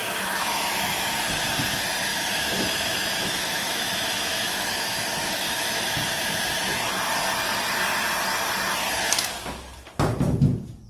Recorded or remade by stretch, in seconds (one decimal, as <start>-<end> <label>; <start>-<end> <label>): 0.0-1.1 remade; 1.1-2.1 recorded; 2.1-6.2 remade; 6.2-10.9 recorded